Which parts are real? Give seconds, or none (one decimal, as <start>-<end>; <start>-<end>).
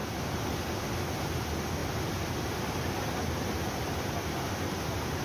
0.0-5.2